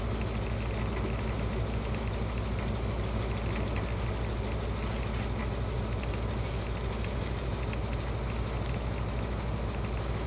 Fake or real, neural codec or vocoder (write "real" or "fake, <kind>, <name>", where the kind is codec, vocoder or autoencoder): real